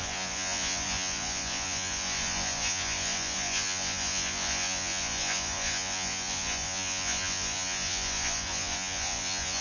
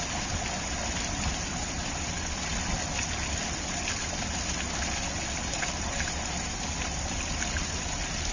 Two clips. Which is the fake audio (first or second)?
first